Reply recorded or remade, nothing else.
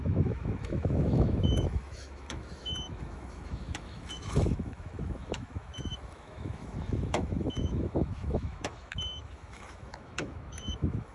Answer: remade